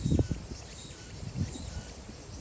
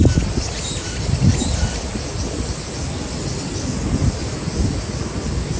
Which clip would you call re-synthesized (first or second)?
first